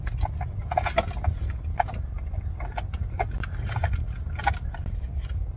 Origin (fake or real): real